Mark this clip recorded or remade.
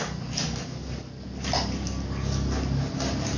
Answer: recorded